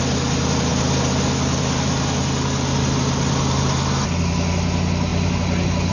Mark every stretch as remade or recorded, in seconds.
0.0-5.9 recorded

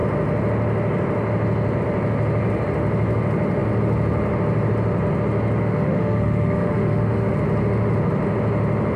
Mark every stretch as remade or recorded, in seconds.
0.0-5.6 recorded; 5.6-7.4 remade; 7.4-9.0 recorded

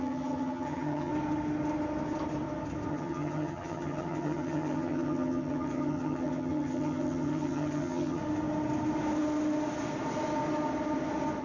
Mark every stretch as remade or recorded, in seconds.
0.0-1.1 remade; 1.1-2.9 recorded; 2.9-8.2 remade; 8.2-11.4 recorded

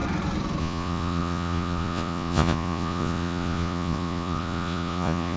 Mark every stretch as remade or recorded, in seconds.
0.0-0.6 recorded; 0.6-5.4 remade